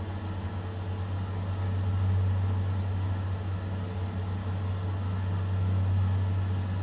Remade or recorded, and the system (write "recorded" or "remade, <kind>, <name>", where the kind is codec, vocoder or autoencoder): recorded